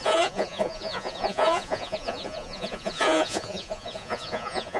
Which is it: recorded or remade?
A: remade